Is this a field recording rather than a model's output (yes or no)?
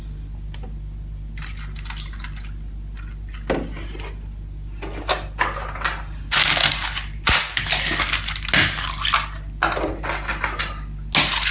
yes